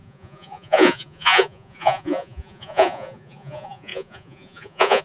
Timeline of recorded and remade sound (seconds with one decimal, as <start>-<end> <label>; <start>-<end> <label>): 0.0-5.0 remade